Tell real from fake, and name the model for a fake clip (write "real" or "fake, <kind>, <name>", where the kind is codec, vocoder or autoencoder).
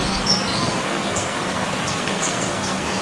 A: fake, codec, SNAC